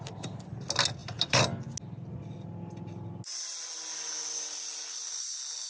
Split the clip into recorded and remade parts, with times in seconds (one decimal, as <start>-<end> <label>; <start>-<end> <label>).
0.0-5.7 recorded